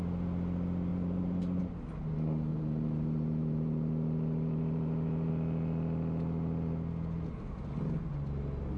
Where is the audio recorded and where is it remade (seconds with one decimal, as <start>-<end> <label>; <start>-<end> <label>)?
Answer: 0.0-0.9 recorded; 0.9-1.6 remade; 1.6-2.5 recorded; 2.5-5.3 remade; 5.3-8.8 recorded